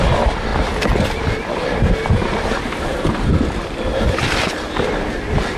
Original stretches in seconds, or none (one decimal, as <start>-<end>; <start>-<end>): 0.0-5.6